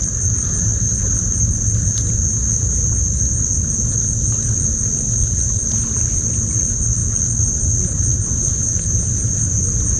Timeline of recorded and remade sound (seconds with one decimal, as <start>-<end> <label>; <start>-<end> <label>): 0.0-10.0 recorded